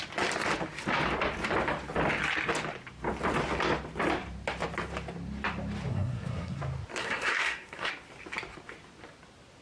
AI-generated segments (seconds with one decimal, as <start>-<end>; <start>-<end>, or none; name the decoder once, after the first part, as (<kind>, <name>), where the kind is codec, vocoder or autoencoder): 5.9-6.6 (codec, SNAC); 7.0-7.9